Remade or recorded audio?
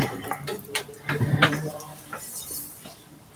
remade